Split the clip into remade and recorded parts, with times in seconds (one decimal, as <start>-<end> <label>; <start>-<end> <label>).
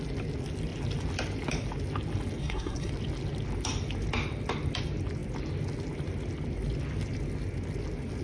0.0-2.4 recorded; 2.4-2.9 remade; 2.9-8.2 recorded